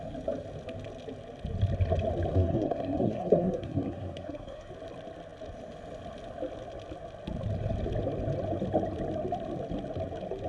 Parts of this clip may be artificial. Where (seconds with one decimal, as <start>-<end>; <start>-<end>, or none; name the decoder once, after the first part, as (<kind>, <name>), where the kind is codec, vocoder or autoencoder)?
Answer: 2.3-4.7 (codec, SNAC)